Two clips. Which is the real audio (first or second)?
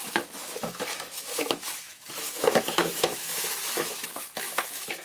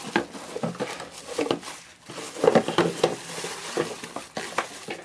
second